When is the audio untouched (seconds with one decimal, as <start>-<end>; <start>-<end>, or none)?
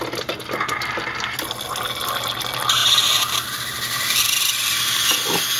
0.0-5.6